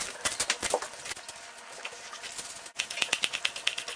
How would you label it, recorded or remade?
recorded